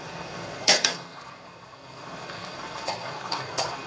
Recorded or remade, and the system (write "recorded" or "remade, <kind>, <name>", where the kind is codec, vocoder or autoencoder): remade, codec, SNAC